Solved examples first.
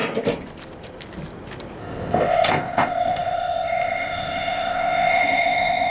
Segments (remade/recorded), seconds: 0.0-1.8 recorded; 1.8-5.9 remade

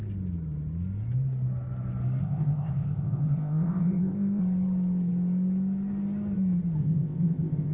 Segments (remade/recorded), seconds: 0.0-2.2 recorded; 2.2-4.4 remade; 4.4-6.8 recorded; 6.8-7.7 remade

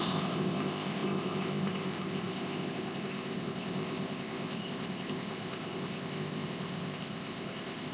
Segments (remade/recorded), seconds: 0.0-7.9 remade